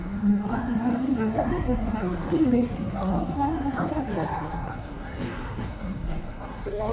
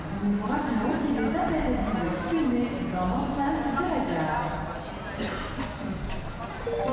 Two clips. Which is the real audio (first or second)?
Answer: second